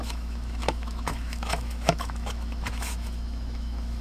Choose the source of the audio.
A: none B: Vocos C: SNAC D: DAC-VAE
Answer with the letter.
D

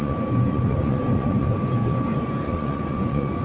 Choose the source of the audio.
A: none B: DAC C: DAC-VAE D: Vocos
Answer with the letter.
D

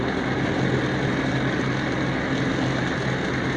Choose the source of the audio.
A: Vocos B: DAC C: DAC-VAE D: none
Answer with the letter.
D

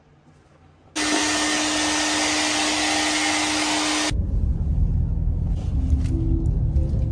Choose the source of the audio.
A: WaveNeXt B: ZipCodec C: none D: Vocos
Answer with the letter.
C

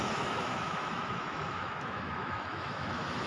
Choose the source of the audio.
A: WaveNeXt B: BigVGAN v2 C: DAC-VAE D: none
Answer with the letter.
C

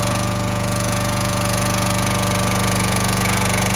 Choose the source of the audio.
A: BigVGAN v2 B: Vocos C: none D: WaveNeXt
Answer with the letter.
B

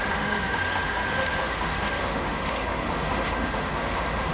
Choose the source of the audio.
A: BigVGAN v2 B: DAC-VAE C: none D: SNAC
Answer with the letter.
B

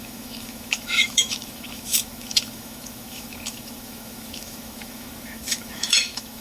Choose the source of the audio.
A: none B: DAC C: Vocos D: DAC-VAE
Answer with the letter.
D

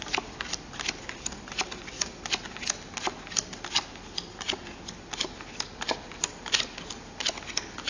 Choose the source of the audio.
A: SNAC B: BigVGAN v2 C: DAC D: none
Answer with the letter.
D